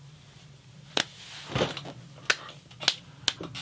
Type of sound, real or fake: real